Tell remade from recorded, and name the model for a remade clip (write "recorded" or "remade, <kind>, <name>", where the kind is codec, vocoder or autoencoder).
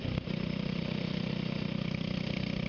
remade, vocoder, BigVGAN v2